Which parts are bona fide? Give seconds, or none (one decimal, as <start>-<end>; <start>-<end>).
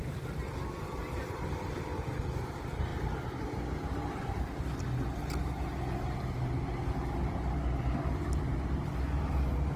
0.0-9.8